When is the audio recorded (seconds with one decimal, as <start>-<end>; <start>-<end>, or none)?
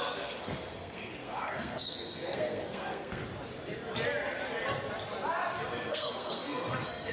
3.2-5.7